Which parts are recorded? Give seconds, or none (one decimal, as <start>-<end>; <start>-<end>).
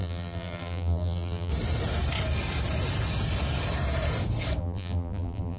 1.5-4.6